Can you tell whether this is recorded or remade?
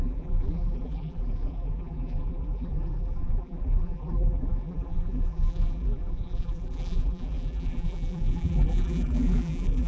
remade